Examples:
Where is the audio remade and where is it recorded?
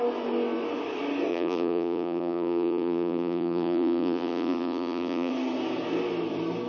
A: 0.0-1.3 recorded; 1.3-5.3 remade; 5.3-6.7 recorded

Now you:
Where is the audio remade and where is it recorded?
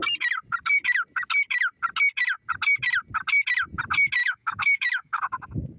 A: 0.0-4.2 recorded; 4.2-5.2 remade; 5.2-5.8 recorded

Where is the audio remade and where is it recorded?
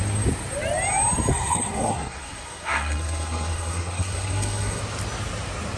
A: 0.0-1.3 recorded; 1.3-4.8 remade; 4.8-5.8 recorded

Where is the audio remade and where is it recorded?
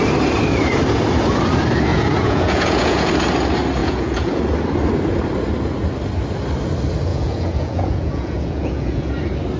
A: 0.0-1.9 recorded; 1.9-3.1 remade; 3.1-3.8 recorded; 3.8-4.4 remade; 4.4-7.1 recorded; 7.1-9.1 remade; 9.1-9.6 recorded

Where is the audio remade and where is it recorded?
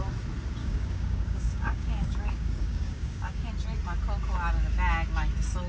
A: 0.0-0.6 recorded; 0.6-3.5 remade; 3.5-5.7 recorded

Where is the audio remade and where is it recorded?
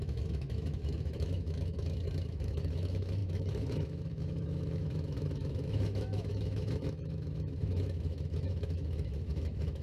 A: 0.0-9.8 remade